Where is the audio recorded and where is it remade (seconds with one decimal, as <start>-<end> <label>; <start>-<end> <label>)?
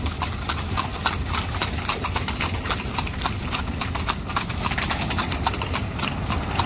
0.0-6.7 recorded